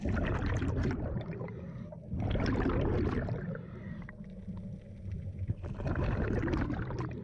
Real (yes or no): yes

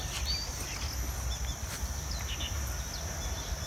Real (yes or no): yes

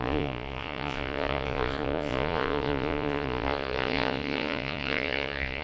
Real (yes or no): no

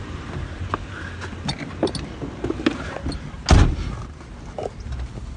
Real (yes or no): yes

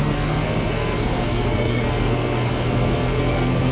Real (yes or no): no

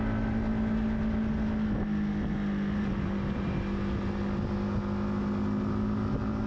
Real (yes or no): yes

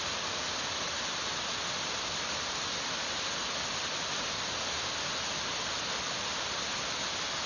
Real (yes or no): yes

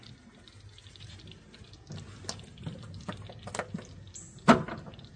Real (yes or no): yes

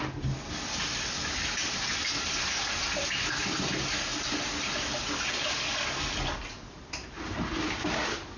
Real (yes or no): yes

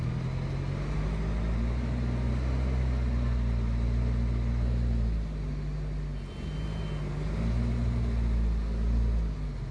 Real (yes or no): yes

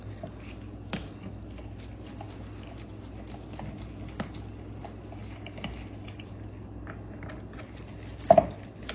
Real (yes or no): yes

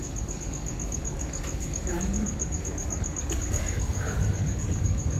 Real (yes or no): no